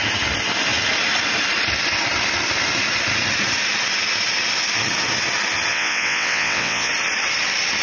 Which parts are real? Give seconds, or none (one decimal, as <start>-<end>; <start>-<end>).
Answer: 0.0-5.7; 6.9-7.8